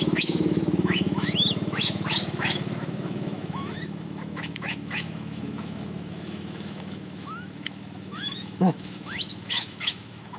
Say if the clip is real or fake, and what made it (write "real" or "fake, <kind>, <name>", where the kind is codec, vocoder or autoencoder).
fake, autoencoder, DAC-VAE